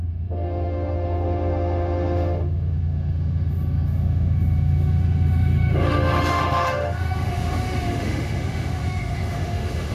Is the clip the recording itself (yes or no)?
no